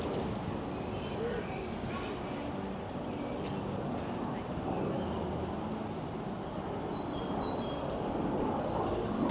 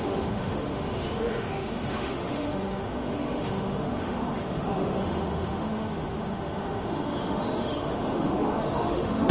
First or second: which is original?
first